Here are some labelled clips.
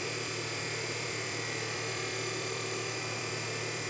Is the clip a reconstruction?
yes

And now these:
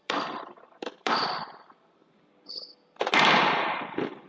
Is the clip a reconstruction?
yes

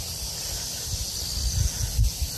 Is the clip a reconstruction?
no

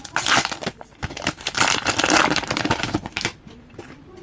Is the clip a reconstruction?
no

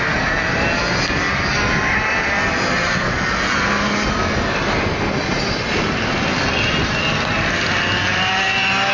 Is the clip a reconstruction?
no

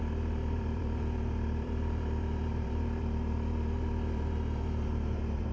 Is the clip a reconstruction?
yes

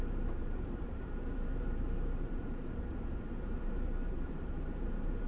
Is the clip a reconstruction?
yes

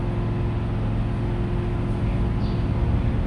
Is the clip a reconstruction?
no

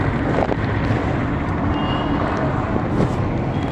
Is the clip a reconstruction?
no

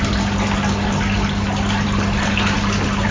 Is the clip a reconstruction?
no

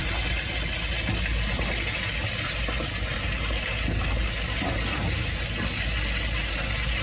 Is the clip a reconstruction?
no